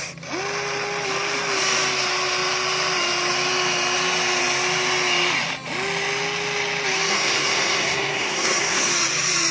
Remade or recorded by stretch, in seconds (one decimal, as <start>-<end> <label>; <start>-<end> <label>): 0.0-7.1 recorded; 7.1-8.9 remade; 8.9-9.5 recorded